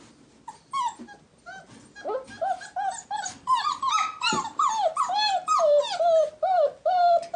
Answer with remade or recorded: recorded